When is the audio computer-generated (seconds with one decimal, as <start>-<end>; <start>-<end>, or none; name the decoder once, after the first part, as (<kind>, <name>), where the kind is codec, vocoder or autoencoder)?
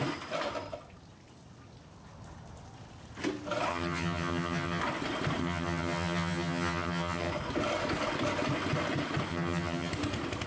3.7-4.8 (vocoder, HiFi-GAN); 5.4-7.3; 9.3-9.9